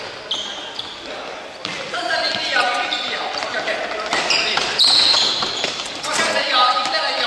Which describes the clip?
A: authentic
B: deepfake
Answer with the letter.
A